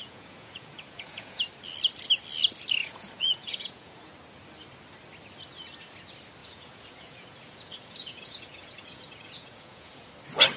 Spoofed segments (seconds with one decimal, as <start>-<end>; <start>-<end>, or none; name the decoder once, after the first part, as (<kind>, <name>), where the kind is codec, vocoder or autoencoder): 0.0-1.4 (vocoder, Vocos); 2.8-4.1; 6.4-10.1